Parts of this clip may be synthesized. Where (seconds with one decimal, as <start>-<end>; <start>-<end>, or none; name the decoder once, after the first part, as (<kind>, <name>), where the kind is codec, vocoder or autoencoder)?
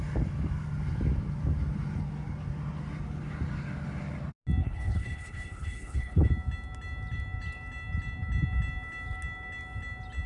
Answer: 4.6-6.3 (codec, HILCodec)